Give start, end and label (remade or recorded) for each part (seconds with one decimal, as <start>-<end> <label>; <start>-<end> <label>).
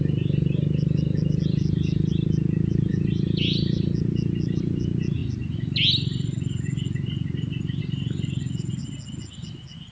0.0-9.9 recorded